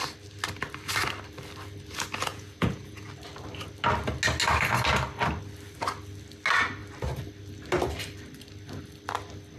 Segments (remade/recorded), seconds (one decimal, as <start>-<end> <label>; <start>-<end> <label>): 0.0-2.3 recorded; 2.3-3.1 remade; 3.1-9.6 recorded